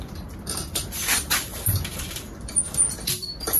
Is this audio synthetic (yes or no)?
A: yes